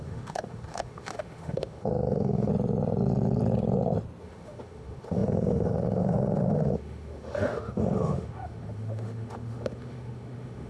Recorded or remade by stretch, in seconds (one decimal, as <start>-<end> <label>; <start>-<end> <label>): 0.0-2.5 remade; 2.5-4.2 recorded; 4.2-10.7 remade